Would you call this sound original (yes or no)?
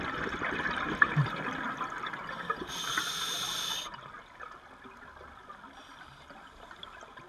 yes